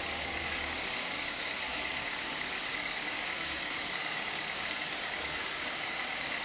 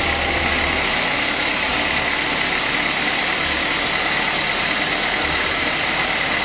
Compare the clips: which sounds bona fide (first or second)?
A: second